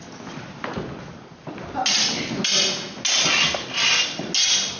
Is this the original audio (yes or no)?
yes